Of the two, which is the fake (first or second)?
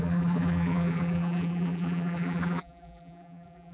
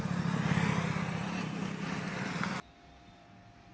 first